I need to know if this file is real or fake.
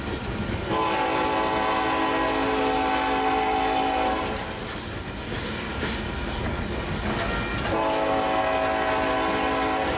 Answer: real